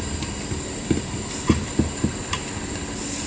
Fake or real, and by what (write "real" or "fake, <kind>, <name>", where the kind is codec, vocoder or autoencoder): real